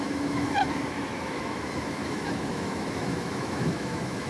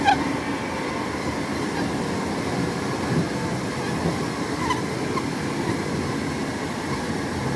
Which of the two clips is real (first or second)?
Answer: second